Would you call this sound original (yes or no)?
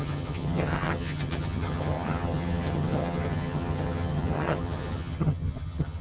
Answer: no